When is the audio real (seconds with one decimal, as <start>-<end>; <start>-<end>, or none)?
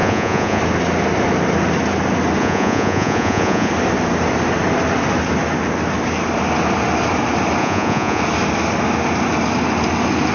0.6-2.4; 3.7-7.6; 8.2-10.3